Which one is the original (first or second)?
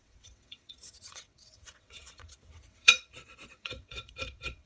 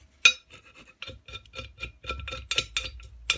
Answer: second